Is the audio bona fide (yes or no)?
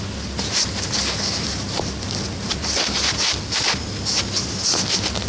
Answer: yes